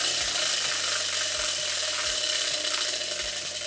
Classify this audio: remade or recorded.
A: recorded